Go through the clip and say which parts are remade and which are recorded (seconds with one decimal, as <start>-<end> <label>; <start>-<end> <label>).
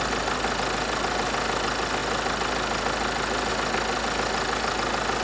0.0-5.2 recorded